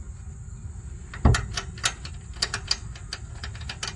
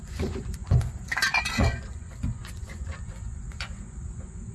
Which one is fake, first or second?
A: second